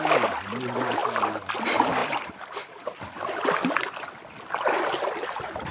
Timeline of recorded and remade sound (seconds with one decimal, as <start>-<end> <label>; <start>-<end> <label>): 0.0-1.0 recorded; 1.0-1.5 remade; 1.5-2.0 recorded; 2.0-5.7 remade